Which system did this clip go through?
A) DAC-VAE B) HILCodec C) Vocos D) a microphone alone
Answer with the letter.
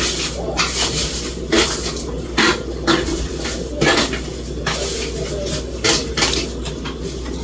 D